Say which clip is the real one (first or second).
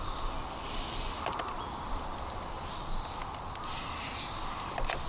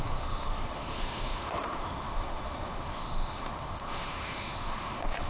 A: first